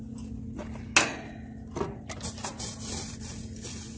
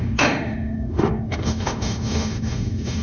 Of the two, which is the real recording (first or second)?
first